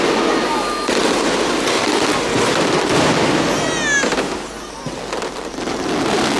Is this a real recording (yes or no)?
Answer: yes